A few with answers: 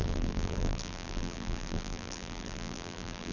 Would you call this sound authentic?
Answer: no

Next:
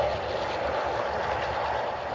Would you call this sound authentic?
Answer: yes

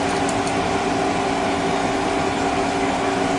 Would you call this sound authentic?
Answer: yes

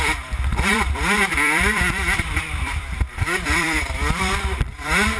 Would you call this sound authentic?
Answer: no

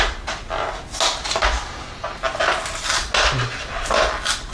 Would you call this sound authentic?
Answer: yes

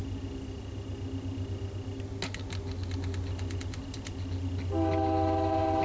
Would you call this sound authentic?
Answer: yes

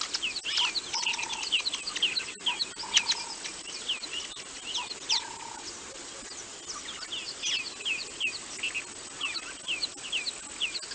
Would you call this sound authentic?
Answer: yes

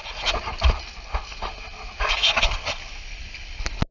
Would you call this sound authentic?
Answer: yes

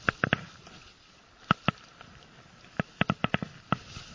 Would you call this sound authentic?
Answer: yes